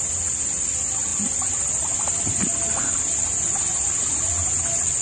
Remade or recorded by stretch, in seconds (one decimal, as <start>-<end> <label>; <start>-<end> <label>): 0.0-5.0 recorded